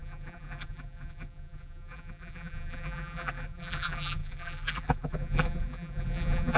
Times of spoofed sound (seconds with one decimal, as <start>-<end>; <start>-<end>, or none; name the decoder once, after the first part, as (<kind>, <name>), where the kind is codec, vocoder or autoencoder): 0.0-6.6 (vocoder, BigVGAN v2)